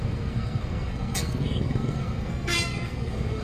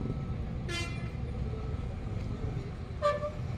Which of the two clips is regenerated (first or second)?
first